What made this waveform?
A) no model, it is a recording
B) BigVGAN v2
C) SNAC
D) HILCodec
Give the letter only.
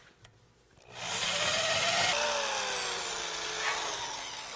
A